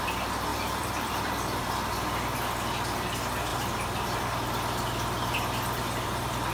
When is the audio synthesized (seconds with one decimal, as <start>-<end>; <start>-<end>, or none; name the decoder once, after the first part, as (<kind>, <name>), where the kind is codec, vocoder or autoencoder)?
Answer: 0.5-1.6 (vocoder, BigVGAN v2); 3.5-4.2